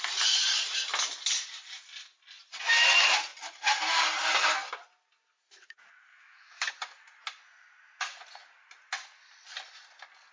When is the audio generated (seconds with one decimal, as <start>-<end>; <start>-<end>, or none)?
6.1-6.7